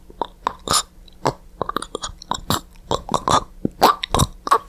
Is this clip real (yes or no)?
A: yes